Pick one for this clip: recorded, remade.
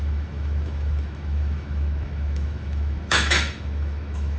remade